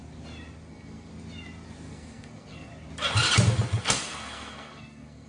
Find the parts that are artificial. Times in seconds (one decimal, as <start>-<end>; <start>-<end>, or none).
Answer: 0.7-1.1; 1.9-2.7; 3.8-5.3